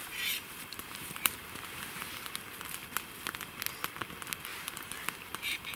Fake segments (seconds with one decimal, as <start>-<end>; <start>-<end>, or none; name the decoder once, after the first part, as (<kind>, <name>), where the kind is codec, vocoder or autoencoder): 0.0-2.3 (vocoder, BigVGAN v2); 4.5-5.8